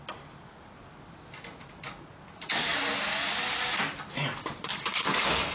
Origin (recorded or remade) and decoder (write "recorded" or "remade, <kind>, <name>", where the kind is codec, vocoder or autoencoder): recorded